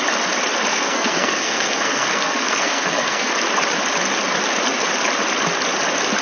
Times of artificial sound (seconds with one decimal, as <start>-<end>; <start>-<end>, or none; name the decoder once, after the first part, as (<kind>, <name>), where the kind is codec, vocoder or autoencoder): 0.7-3.3 (codec, SNAC)